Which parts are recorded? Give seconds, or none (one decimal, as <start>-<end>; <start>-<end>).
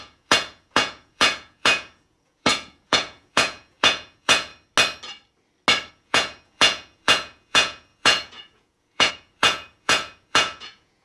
4.5-5.9